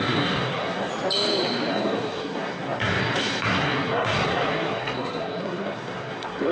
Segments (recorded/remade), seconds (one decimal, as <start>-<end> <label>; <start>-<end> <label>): 0.0-0.9 remade; 0.9-1.7 recorded; 1.7-6.5 remade